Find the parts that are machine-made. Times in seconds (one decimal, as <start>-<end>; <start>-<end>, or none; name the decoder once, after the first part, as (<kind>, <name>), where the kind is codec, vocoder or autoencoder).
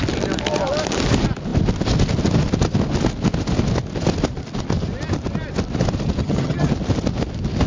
6.2-6.7 (vocoder, HiFi-GAN)